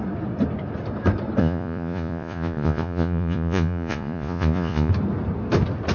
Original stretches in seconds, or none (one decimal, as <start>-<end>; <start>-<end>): 0.0-1.4; 4.9-5.9